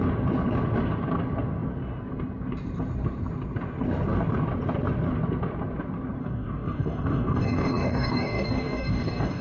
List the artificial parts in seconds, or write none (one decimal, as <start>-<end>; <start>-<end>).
6.2-9.4